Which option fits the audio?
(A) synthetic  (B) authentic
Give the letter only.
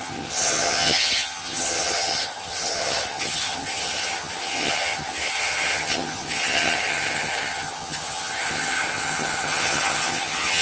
A